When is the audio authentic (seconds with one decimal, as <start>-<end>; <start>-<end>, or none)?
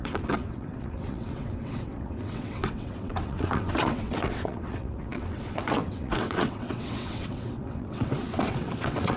none